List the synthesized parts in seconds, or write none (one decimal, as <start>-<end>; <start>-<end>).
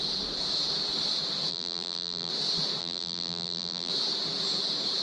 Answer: 1.5-2.3; 2.8-3.9